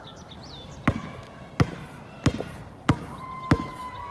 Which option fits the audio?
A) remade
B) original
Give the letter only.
B